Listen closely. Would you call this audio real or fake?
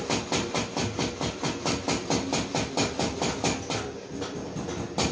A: real